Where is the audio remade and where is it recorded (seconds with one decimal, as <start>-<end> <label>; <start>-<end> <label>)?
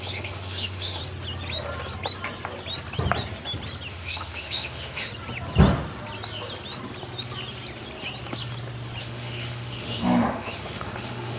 0.0-1.0 remade; 1.0-3.9 recorded; 3.9-5.1 remade; 5.1-9.0 recorded; 9.0-11.4 remade